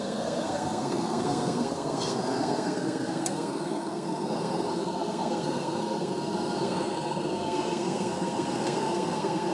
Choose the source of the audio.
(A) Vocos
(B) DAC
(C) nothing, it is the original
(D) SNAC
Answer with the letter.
D